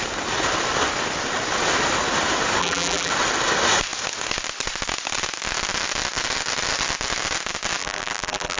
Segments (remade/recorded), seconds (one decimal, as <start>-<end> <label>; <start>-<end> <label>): 0.0-2.6 recorded; 2.6-3.1 remade; 3.1-7.8 recorded; 7.8-8.6 remade